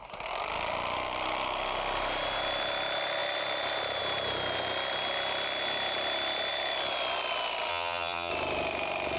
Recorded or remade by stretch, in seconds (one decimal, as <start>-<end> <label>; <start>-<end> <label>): 0.0-7.7 recorded; 7.7-8.3 remade; 8.3-9.2 recorded